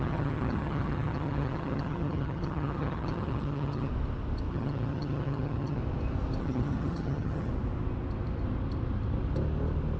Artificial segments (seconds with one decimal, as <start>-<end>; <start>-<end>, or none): 0.0-3.9; 4.5-5.8; 6.4-7.5